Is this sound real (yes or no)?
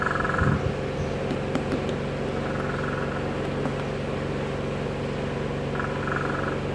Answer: yes